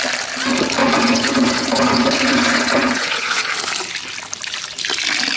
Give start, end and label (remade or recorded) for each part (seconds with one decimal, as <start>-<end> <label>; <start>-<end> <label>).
0.0-0.8 recorded; 0.8-3.5 remade; 3.5-5.4 recorded